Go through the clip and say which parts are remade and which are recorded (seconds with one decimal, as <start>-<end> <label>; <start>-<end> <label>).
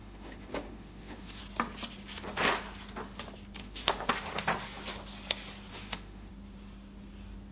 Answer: 0.0-1.4 remade; 1.4-3.6 recorded; 3.6-4.1 remade; 4.1-5.7 recorded; 5.7-6.3 remade; 6.3-7.5 recorded